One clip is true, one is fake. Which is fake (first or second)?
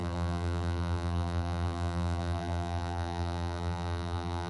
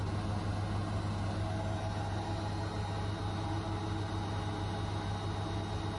first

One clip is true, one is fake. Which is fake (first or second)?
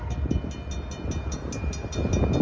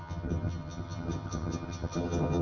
second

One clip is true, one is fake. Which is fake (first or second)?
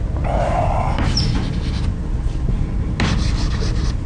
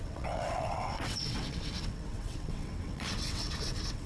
second